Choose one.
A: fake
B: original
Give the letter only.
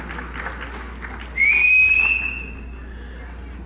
B